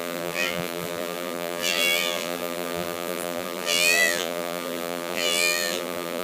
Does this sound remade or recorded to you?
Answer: remade